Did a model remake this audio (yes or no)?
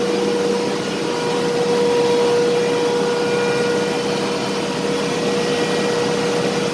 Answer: no